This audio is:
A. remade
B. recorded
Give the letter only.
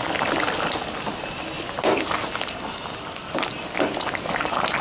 B